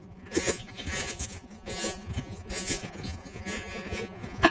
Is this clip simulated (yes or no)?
yes